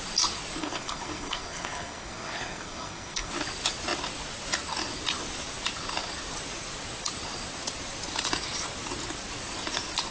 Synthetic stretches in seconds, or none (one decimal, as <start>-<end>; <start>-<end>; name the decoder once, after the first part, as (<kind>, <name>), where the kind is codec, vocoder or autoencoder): 0.6-3.3 (codec, SNAC)

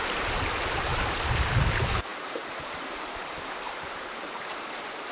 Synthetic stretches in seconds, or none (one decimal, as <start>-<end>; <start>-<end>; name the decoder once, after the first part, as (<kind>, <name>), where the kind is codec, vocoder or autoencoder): 0.0-5.1 (vocoder, BigVGAN v2)

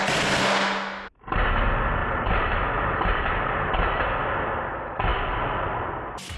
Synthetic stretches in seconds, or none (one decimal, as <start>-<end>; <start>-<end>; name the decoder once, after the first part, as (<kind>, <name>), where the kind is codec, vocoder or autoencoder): 2.0-3.7 (vocoder, BigVGAN v2)